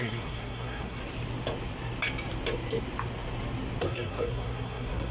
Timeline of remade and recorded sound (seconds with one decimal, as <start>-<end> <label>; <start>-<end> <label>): 0.0-1.0 remade; 1.0-3.8 recorded; 3.8-5.1 remade